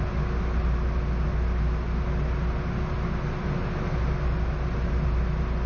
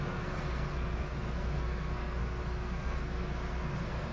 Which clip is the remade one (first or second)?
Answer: second